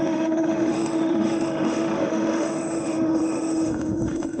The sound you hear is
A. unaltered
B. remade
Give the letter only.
B